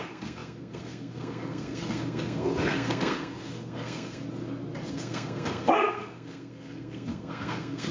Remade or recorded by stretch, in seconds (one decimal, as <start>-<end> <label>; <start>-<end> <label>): 0.0-4.2 remade; 4.2-4.9 recorded; 4.9-7.9 remade